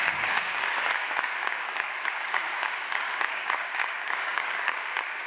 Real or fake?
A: fake